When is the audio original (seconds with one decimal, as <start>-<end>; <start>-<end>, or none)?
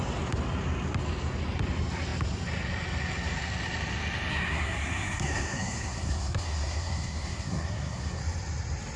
0.0-4.3; 8.2-9.0